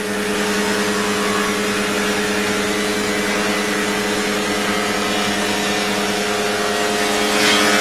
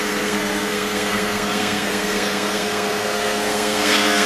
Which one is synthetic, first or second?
second